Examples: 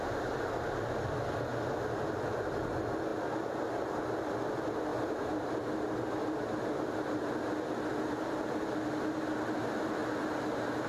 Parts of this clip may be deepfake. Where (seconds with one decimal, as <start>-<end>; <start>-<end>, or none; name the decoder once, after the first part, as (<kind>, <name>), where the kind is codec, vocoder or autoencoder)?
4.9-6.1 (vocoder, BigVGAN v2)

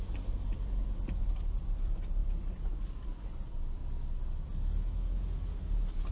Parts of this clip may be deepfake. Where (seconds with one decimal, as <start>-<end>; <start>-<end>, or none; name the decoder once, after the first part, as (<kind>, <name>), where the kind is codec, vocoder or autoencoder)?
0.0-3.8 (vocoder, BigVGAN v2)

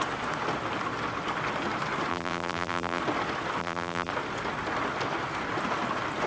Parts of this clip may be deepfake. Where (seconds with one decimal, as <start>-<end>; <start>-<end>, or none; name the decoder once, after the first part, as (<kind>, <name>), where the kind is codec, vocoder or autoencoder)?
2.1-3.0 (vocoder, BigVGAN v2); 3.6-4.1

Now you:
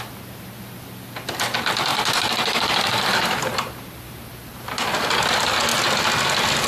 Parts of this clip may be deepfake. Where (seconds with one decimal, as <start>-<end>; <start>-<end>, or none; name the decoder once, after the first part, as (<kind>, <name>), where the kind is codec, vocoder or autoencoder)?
1.9-4.7 (vocoder, BigVGAN v2)

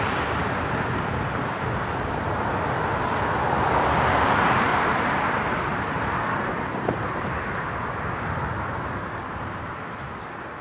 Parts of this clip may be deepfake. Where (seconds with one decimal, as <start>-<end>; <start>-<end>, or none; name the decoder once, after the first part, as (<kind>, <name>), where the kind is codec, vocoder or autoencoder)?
4.7-5.3 (vocoder, BigVGAN v2); 5.7-9.2